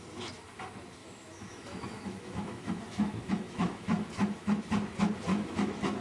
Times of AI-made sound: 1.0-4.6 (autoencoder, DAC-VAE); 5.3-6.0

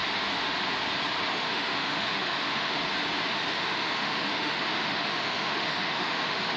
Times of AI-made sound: 1.3-2.8 (autoencoder, DAC-VAE); 3.3-6.6

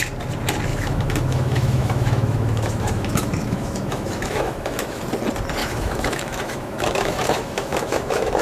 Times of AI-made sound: 0.7-5.0 (autoencoder, DAC-VAE); 5.6-8.4

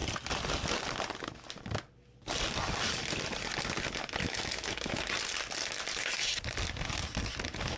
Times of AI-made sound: 4.2-5.0 (autoencoder, DAC-VAE)